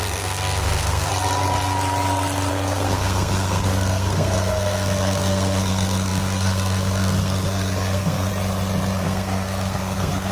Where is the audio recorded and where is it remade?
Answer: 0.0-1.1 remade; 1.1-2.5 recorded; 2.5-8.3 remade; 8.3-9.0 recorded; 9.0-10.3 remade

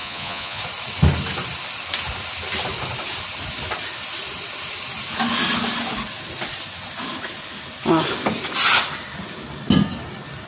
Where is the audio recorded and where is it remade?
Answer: 0.0-0.6 remade; 0.6-10.5 recorded

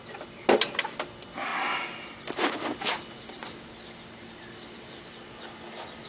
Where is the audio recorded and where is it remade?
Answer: 0.0-6.1 recorded

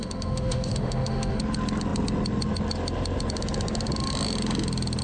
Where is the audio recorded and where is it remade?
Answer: 0.0-1.4 remade; 1.4-5.0 recorded

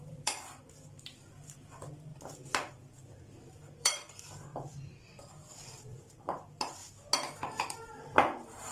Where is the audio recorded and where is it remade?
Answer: 0.0-4.5 remade; 4.5-5.2 recorded; 5.2-6.8 remade; 6.8-7.6 recorded; 7.6-8.7 remade

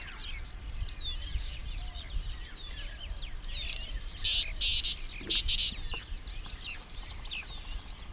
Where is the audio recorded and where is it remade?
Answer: 0.0-8.1 recorded

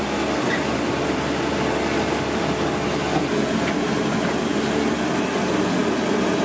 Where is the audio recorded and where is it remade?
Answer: 0.0-6.4 recorded